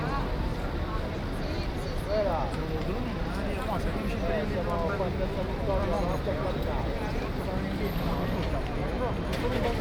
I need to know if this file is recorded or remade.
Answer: recorded